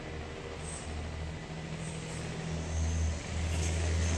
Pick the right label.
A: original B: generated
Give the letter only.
A